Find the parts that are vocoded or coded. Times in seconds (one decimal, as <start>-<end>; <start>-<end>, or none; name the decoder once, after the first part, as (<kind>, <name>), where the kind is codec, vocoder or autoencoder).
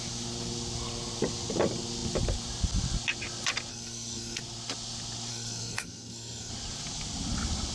3.7-4.4 (codec, SNAC); 5.3-6.5